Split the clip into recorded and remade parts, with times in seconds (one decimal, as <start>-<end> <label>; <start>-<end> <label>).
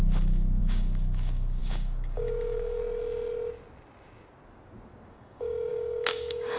0.0-2.8 remade; 2.8-5.1 recorded; 5.1-6.6 remade